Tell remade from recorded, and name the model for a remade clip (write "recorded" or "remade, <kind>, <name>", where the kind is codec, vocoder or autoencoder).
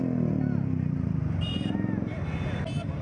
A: recorded